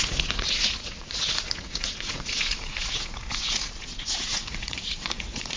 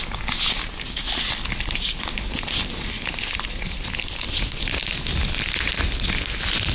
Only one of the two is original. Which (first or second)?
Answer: second